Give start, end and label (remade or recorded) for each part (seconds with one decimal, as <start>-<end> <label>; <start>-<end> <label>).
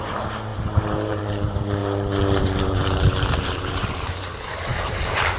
0.0-1.8 remade; 1.8-2.4 recorded; 2.4-5.4 remade